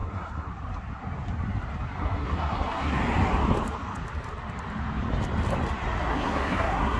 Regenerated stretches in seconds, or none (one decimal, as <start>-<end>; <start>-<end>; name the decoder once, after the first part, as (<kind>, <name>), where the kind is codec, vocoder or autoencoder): 0.0-0.5 (codec, SNAC); 2.0-3.0; 6.1-7.0